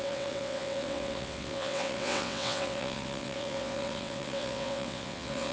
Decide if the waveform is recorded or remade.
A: remade